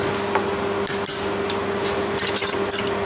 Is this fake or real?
real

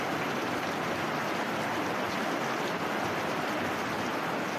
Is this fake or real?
real